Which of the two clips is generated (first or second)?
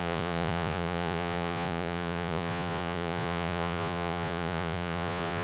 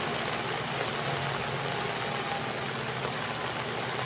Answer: first